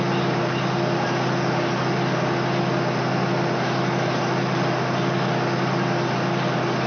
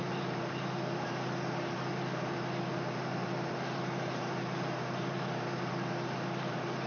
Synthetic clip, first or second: second